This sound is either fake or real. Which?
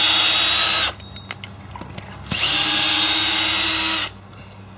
real